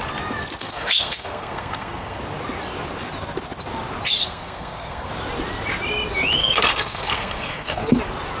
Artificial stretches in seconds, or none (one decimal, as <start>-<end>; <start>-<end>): 0.6-2.2; 4.2-5.1; 6.4-8.0